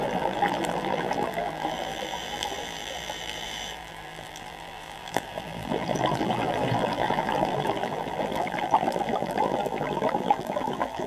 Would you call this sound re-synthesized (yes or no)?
yes